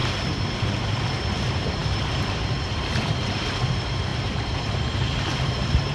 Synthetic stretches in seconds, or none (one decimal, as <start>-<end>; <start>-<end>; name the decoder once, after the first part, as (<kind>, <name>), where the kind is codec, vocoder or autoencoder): 0.6-5.9 (vocoder, BigVGAN v2)